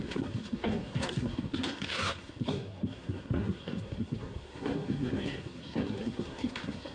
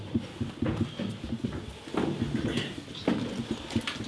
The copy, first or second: first